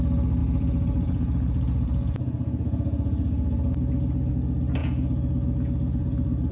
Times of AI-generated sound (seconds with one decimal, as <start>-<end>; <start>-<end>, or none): 0.4-4.3; 4.8-6.5